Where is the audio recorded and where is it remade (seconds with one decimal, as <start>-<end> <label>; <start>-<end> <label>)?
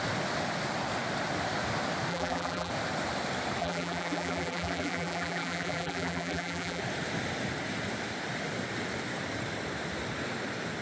0.0-2.1 recorded; 2.1-2.7 remade; 2.7-3.6 recorded; 3.6-6.8 remade; 6.8-10.8 recorded